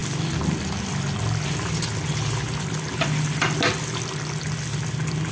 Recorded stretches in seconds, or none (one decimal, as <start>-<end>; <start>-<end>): 0.0-5.3